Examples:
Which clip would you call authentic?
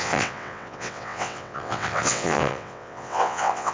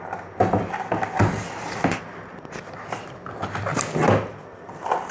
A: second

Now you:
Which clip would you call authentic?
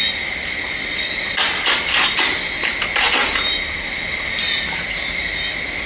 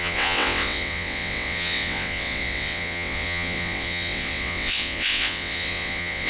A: first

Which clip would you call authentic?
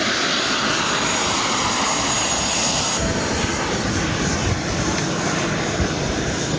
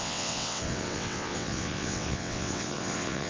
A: first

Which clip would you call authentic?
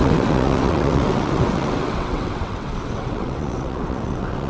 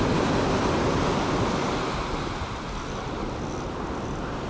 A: second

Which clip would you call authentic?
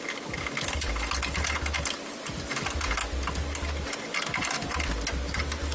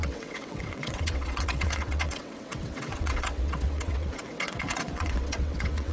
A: first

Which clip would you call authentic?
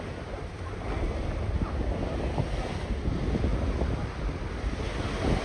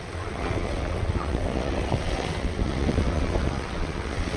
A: first